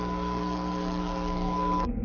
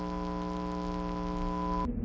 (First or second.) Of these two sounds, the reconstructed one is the first